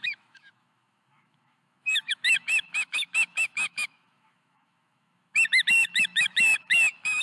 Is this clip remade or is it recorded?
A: remade